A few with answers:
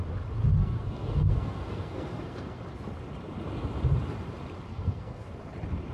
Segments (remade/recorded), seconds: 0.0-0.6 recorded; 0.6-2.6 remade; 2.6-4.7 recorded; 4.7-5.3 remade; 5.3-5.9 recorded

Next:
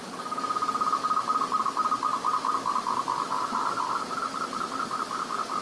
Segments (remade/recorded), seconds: 0.0-5.6 recorded

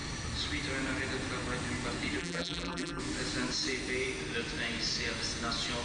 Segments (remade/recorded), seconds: 0.0-2.2 recorded; 2.2-3.0 remade; 3.0-5.8 recorded